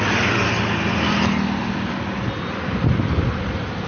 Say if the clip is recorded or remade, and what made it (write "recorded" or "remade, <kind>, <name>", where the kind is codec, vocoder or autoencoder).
recorded